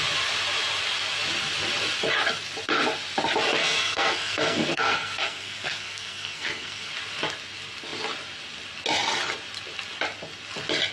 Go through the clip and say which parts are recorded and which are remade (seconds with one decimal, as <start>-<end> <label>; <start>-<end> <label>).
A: 0.0-3.6 recorded; 3.6-6.9 remade; 6.9-10.9 recorded